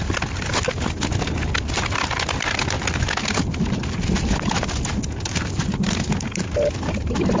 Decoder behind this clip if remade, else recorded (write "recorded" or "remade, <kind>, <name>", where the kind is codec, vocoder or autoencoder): recorded